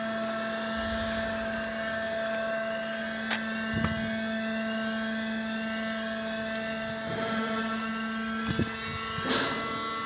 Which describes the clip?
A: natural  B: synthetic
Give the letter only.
A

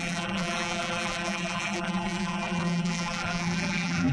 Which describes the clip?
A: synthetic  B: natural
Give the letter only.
A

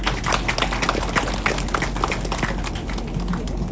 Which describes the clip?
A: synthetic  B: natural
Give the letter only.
B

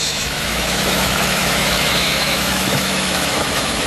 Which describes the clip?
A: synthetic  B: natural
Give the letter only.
A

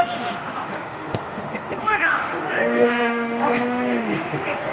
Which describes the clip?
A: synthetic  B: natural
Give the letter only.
A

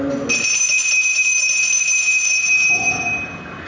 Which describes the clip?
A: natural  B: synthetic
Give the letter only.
A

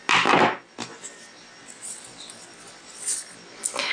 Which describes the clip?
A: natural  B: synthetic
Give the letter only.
A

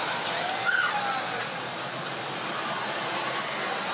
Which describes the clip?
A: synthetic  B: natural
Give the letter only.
B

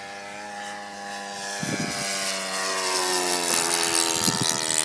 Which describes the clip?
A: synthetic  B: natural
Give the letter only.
B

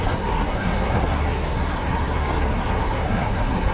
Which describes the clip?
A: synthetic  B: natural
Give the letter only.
A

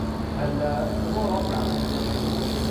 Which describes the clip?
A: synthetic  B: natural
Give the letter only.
B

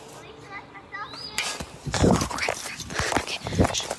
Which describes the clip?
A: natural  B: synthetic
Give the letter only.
A